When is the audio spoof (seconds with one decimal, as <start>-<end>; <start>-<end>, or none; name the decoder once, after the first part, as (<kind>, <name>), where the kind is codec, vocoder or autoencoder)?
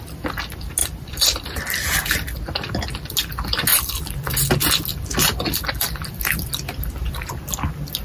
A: 0.8-2.0 (vocoder, BigVGAN v2); 3.7-4.5; 4.9-7.4